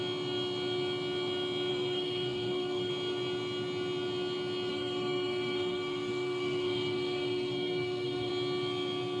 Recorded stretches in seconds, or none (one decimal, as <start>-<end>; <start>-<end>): 0.0-1.7; 2.9-4.7; 8.3-9.2